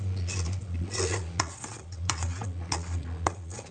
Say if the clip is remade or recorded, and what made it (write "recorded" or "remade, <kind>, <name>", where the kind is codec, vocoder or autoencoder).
remade, vocoder, Vocos